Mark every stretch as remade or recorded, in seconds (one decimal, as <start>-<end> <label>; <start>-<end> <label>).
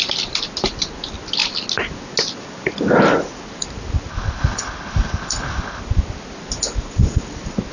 0.0-4.1 recorded; 4.1-5.8 remade; 5.8-7.7 recorded